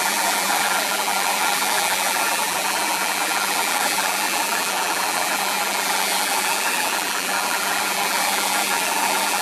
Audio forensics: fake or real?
fake